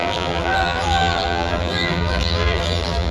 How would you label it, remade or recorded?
remade